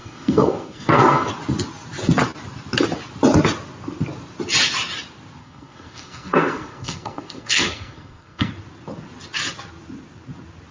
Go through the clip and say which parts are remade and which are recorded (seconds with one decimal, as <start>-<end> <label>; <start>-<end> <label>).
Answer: 0.0-1.3 remade; 1.3-5.4 recorded; 5.4-8.5 remade; 8.5-10.7 recorded